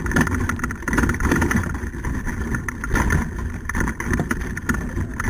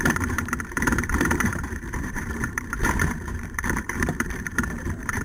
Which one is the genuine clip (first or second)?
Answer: first